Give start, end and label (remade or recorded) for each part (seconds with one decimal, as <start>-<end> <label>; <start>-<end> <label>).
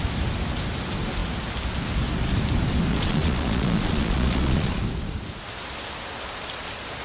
0.0-2.9 recorded; 2.9-4.8 remade; 4.8-7.0 recorded